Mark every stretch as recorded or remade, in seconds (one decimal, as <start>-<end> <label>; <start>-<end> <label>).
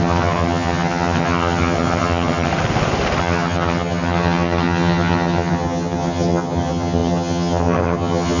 0.0-2.5 remade; 2.5-3.2 recorded; 3.2-8.4 remade